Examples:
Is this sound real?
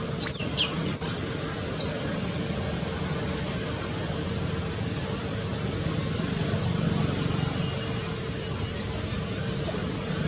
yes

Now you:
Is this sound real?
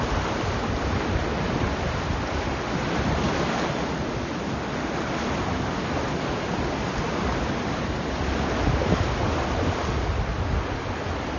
yes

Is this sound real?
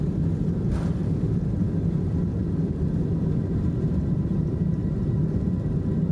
yes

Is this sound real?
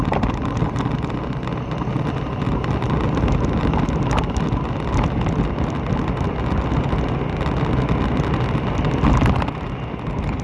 yes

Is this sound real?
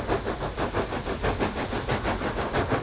yes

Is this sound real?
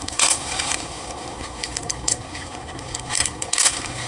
no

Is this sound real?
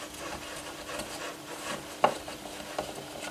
yes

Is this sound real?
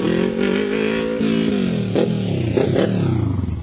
yes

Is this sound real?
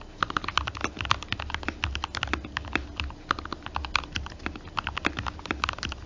yes